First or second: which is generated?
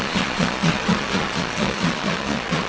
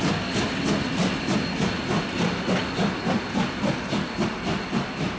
first